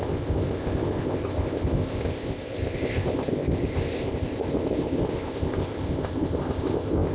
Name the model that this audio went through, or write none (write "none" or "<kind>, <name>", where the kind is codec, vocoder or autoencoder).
codec, ZipCodec